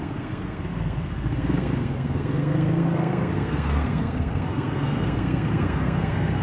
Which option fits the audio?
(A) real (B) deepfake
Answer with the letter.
B